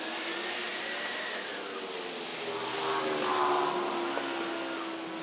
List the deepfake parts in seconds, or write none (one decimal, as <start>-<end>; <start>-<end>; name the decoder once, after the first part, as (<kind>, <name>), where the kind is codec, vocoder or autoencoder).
none